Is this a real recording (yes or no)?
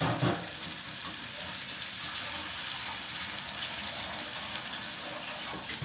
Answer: yes